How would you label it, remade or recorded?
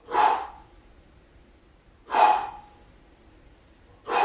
recorded